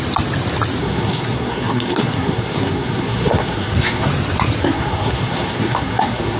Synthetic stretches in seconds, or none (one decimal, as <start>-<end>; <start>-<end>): 0.8-4.1; 4.6-6.4